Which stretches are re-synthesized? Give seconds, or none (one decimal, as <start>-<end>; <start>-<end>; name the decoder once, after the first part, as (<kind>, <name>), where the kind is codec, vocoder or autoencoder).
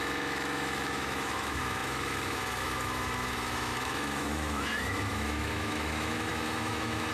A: 0.0-7.1 (autoencoder, DAC-VAE)